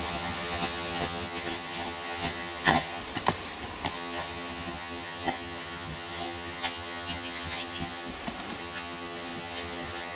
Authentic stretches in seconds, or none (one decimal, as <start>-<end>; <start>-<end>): 3.0-3.9; 8.1-8.6